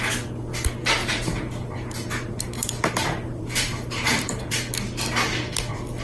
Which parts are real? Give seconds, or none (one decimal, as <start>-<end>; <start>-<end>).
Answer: 0.0-1.0; 4.5-6.0